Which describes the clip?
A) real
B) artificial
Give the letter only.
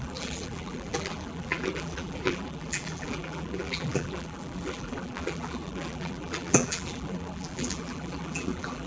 B